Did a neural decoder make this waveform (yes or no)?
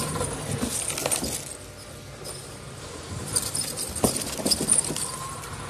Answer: no